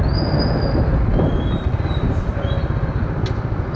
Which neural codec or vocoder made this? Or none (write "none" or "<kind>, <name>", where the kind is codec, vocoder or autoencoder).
none